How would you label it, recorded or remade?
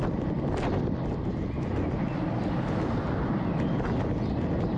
recorded